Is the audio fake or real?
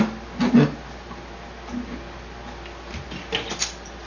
real